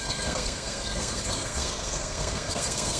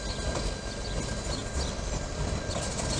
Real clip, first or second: second